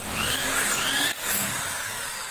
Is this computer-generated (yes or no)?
yes